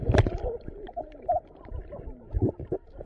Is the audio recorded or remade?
recorded